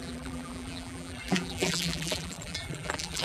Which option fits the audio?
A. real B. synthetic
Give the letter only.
B